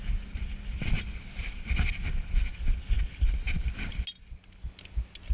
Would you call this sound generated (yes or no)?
no